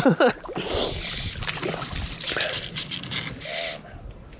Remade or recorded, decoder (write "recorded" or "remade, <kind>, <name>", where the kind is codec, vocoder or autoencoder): recorded